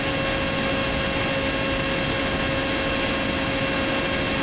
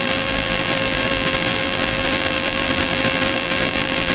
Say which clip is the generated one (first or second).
second